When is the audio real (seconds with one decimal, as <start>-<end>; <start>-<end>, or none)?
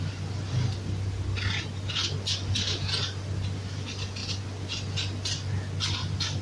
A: 0.0-6.4